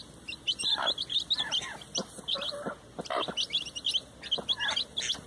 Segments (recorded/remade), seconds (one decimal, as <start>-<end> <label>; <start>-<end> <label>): 0.0-3.2 remade; 3.2-5.3 recorded